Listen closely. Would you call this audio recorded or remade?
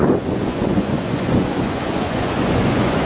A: remade